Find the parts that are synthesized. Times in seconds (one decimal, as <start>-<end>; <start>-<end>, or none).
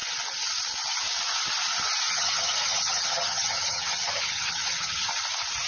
2.1-5.1